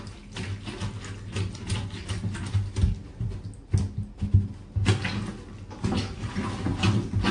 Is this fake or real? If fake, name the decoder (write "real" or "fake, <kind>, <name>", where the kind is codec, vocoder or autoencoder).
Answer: real